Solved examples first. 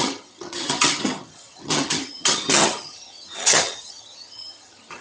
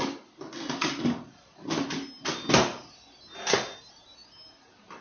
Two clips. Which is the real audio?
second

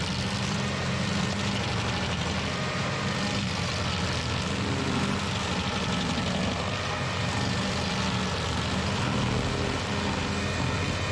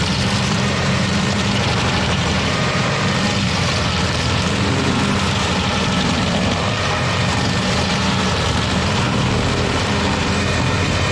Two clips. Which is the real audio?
first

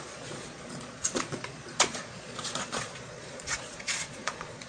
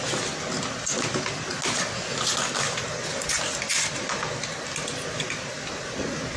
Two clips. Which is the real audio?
second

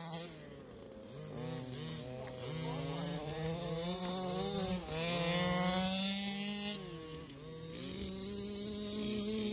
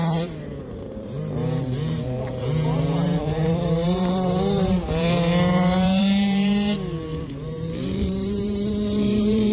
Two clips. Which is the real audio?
first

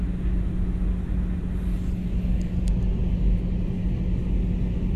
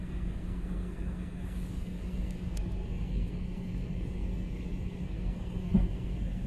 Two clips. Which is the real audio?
first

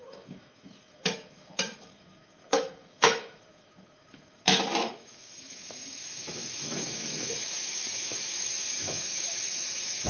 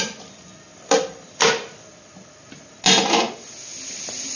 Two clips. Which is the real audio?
second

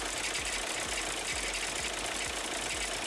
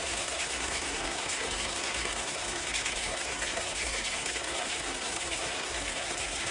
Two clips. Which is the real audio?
first